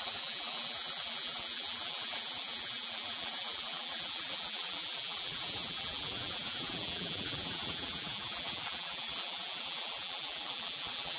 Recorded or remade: remade